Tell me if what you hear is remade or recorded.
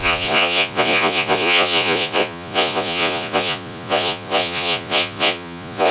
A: remade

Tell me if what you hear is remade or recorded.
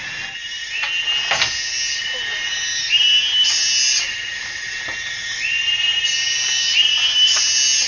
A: recorded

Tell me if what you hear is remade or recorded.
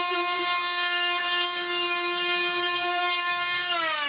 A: remade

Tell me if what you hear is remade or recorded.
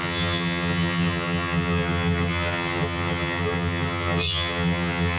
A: remade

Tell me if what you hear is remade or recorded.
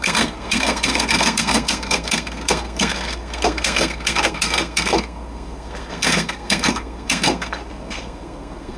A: remade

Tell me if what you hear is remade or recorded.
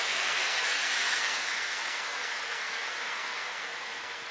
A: remade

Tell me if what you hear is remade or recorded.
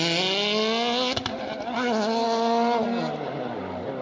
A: recorded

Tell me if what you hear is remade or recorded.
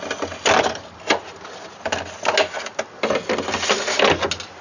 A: recorded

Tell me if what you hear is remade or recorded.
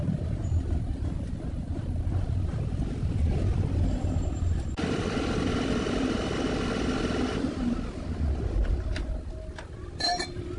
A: recorded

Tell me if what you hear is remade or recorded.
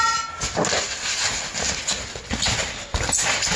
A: recorded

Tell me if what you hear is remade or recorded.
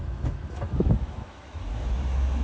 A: remade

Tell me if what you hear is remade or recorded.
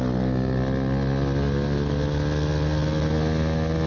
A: recorded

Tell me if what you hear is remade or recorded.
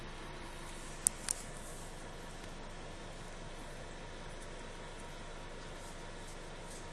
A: recorded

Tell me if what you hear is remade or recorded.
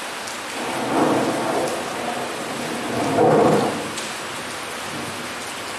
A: recorded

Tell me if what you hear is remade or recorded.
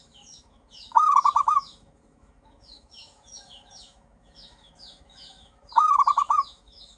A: remade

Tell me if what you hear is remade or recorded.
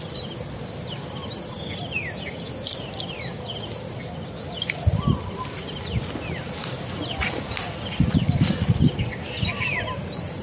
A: recorded